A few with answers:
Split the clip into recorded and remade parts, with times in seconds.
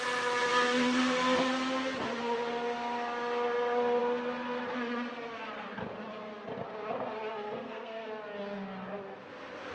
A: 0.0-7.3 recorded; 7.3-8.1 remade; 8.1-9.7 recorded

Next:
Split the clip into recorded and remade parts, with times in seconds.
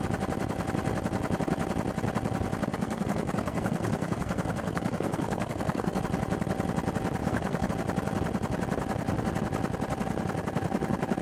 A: 0.0-2.7 recorded; 2.7-6.0 remade; 6.0-7.2 recorded; 7.2-7.7 remade; 7.7-11.2 recorded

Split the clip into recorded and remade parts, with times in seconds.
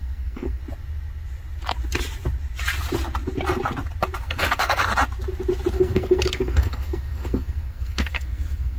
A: 0.0-0.6 remade; 0.6-4.2 recorded; 4.2-4.9 remade; 4.9-5.7 recorded; 5.7-8.8 remade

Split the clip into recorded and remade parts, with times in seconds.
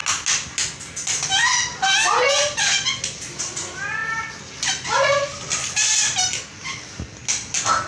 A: 0.0-7.9 recorded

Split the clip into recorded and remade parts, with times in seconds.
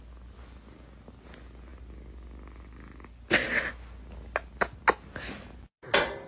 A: 0.0-6.3 recorded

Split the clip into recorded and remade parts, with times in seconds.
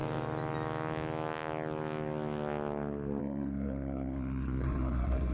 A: 0.0-3.2 recorded; 3.2-5.3 remade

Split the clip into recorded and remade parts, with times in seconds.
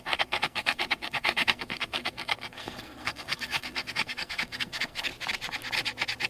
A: 0.0-5.1 remade; 5.1-6.3 recorded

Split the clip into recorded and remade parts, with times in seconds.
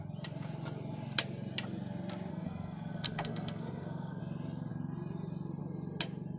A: 0.0-2.3 recorded; 2.3-4.2 remade; 4.2-6.4 recorded